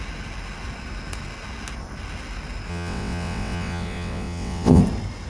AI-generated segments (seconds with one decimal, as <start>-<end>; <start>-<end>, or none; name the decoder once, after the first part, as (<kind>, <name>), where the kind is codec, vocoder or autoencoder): 2.7-4.8 (vocoder, WaveNeXt)